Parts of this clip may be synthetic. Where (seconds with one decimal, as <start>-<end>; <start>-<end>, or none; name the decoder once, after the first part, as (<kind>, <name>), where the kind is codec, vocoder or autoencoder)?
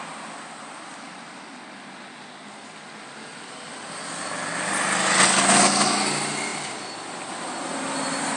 none